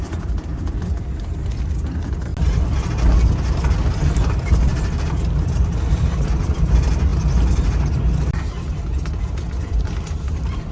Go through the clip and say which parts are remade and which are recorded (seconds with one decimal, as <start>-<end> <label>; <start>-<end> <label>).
0.0-2.3 remade; 2.3-4.1 recorded; 4.1-10.7 remade